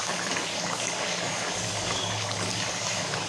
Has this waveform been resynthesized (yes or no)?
yes